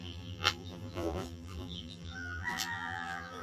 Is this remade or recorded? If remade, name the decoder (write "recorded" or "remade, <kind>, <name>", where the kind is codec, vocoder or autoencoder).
remade, vocoder, BigVGAN v2